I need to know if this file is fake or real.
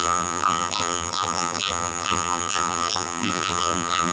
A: fake